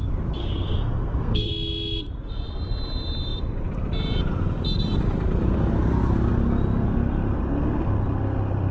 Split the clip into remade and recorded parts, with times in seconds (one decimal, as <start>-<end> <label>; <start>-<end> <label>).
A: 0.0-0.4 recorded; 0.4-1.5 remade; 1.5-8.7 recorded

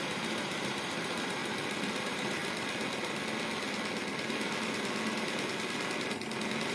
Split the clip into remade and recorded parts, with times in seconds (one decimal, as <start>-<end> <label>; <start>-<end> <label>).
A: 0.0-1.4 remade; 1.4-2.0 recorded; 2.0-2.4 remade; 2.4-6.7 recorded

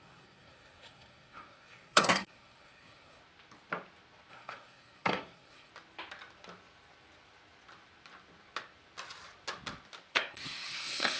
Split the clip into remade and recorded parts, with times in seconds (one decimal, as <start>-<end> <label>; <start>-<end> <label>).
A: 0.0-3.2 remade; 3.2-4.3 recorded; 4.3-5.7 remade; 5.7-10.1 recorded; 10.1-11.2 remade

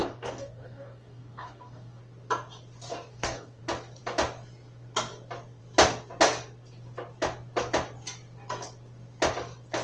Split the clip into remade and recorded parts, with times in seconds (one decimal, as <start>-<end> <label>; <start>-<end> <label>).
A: 0.0-2.0 remade; 2.0-2.9 recorded; 2.9-3.6 remade; 3.6-9.8 recorded

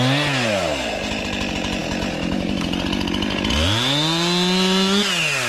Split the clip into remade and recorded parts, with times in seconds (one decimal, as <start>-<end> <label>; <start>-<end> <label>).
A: 0.0-5.5 recorded

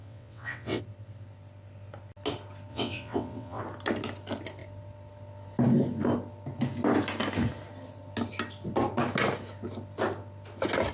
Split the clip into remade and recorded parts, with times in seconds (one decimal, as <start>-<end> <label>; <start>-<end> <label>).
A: 0.0-0.8 remade; 0.8-2.7 recorded; 2.7-3.6 remade; 3.6-10.9 recorded